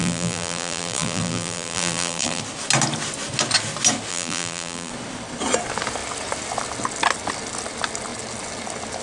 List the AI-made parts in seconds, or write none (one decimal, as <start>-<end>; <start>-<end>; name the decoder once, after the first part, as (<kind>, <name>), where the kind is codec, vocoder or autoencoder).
0.0-2.4 (vocoder, BigVGAN v2); 4.1-4.9